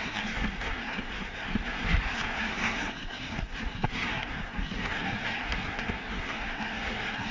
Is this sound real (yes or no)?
no